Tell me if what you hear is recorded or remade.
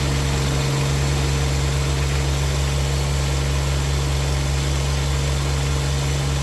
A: recorded